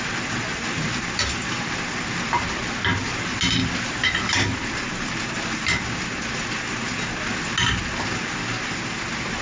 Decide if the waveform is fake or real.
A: real